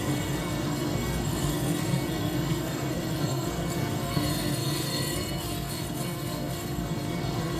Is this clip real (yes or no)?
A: no